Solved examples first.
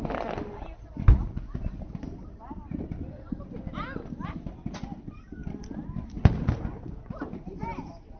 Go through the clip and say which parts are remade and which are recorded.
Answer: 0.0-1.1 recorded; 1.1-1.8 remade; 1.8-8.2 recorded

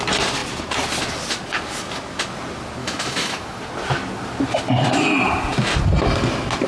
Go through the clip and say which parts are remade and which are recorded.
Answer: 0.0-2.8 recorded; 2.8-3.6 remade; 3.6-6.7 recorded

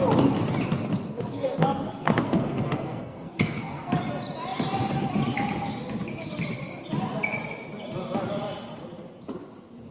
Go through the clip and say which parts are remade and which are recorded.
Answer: 0.0-1.1 recorded; 1.1-3.9 remade; 3.9-9.9 recorded